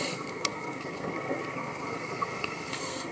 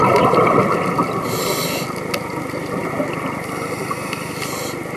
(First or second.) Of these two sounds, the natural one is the second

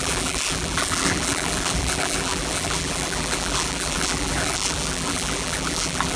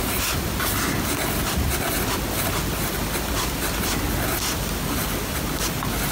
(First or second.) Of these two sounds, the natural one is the second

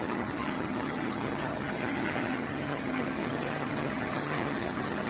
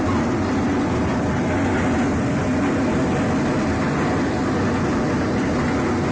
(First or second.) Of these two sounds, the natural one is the second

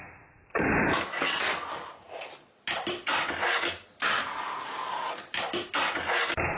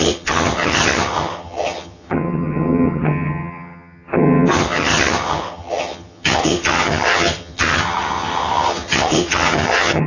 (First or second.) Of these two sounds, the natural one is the first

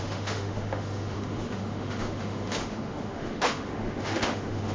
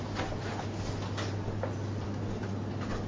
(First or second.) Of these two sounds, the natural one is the second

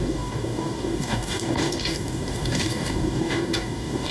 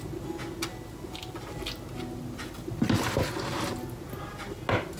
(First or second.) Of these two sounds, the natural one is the second